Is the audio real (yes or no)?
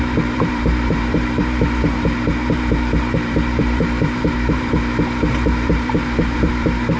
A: no